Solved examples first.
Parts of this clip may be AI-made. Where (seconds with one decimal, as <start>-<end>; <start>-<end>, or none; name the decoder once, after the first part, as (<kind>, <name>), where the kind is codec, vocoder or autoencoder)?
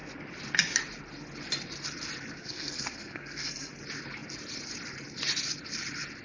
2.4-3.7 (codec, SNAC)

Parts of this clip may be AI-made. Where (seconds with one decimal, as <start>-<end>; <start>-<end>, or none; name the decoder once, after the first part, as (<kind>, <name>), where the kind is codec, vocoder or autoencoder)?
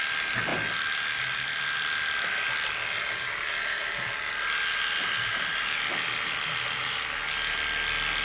none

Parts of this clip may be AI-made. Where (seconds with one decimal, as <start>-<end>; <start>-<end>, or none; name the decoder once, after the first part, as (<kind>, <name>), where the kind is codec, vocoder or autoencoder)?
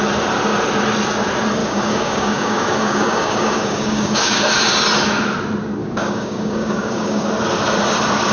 1.6-4.4 (codec, DAC); 5.8-7.3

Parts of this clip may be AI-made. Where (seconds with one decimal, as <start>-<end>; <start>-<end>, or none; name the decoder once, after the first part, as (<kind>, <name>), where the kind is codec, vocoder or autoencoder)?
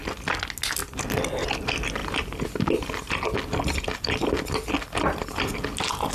none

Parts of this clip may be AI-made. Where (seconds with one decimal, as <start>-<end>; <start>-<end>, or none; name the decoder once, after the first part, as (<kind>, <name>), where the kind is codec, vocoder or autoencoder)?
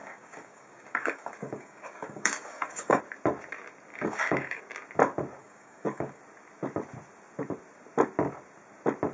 0.0-3.0 (codec, DAC); 3.9-4.6; 5.4-6.2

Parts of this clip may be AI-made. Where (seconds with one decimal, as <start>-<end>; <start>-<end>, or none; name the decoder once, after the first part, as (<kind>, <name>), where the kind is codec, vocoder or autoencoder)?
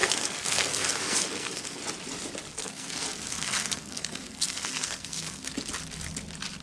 0.0-1.8 (codec, SNAC); 2.5-5.6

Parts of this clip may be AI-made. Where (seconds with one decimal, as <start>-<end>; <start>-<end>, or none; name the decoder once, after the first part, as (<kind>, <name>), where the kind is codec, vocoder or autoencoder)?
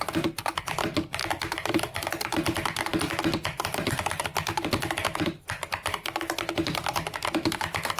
1.2-1.8 (vocoder, BigVGAN v2)